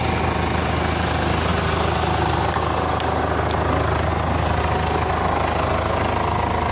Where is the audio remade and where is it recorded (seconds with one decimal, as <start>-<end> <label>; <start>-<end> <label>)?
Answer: 0.0-1.5 recorded; 1.5-2.6 remade; 2.6-6.7 recorded